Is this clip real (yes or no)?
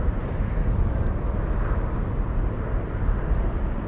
yes